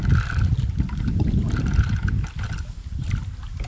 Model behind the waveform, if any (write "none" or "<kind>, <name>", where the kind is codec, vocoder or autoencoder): none